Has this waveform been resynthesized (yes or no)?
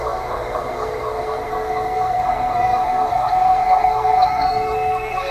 yes